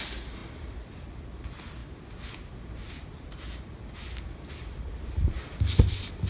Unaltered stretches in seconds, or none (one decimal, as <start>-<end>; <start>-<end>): 0.0-6.3